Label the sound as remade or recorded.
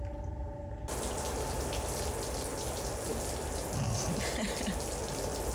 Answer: recorded